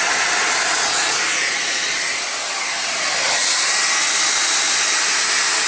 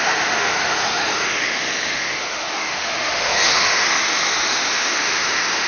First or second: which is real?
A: first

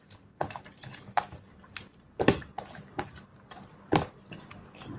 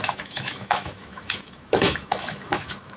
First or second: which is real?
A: first